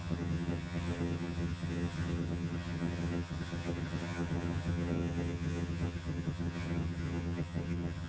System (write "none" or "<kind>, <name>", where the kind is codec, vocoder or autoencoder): vocoder, HiFi-GAN